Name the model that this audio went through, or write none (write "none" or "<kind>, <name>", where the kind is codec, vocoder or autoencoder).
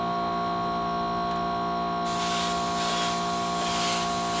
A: none